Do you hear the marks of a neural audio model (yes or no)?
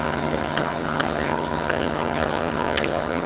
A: yes